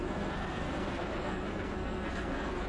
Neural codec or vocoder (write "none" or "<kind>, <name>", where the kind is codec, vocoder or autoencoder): codec, SNAC